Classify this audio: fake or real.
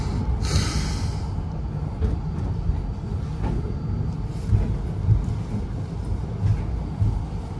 real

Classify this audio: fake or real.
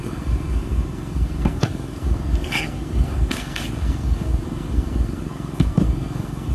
fake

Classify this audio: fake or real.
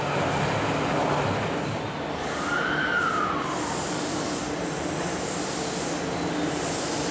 real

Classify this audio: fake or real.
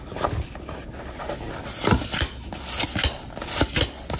real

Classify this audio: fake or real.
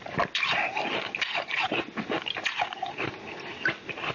real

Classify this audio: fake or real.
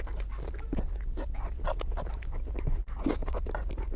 real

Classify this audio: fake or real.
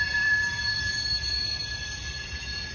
fake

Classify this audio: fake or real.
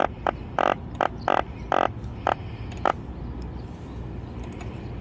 real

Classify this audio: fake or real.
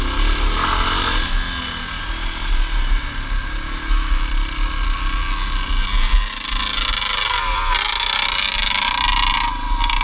real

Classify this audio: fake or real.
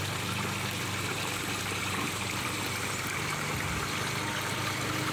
real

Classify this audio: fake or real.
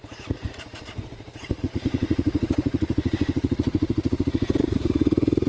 fake